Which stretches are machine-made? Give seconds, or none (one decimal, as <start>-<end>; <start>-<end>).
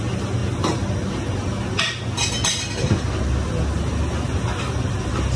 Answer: none